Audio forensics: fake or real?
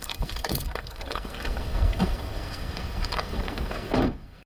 fake